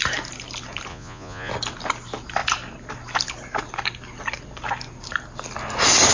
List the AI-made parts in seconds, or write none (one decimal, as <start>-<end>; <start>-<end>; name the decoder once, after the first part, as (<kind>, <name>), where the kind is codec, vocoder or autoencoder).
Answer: 0.9-1.5 (vocoder, Vocos)